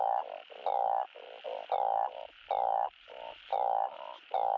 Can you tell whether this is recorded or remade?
recorded